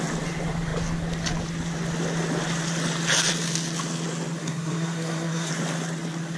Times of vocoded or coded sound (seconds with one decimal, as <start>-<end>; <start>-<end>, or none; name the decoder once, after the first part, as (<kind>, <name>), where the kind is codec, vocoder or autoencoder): 4.4-5.5 (codec, SNAC)